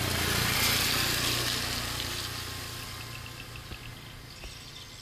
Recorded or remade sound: recorded